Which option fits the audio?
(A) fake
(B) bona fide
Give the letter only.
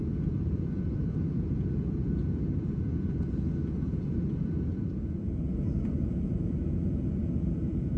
A